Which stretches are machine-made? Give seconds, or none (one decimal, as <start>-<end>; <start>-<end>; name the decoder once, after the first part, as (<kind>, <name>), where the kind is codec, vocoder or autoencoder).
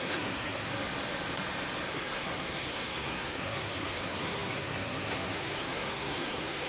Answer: 0.0-0.7 (codec, SNAC); 1.9-6.7